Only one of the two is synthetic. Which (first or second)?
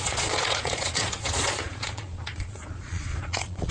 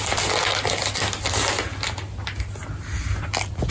first